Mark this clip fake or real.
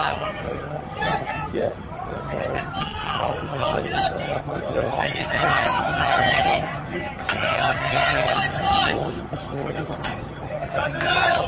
fake